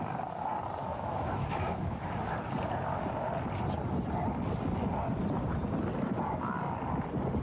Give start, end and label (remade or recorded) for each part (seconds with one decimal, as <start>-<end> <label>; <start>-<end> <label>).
0.0-0.8 recorded; 0.8-2.1 remade; 2.1-7.4 recorded